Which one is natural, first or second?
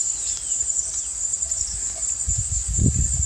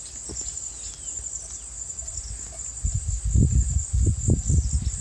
second